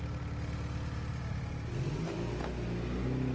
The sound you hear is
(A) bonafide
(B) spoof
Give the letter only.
A